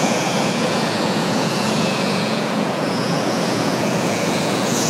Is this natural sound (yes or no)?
no